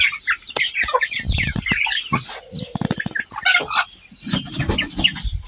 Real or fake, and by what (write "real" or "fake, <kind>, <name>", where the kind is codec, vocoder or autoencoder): real